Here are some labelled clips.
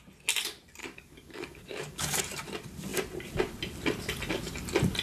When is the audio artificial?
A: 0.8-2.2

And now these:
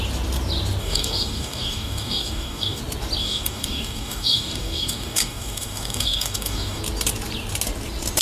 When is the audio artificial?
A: 0.8-2.8; 3.2-6.8

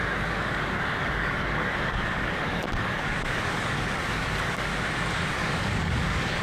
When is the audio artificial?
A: 0.0-4.7; 5.3-6.4

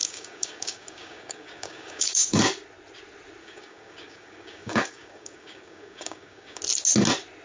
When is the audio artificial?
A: 0.0-2.4; 3.4-6.6

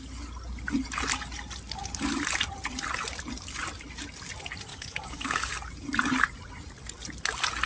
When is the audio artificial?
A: 4.7-5.5

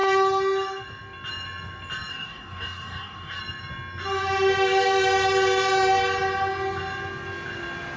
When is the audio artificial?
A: 2.1-3.4

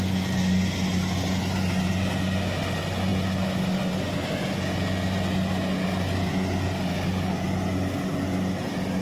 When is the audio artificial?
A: 6.9-7.5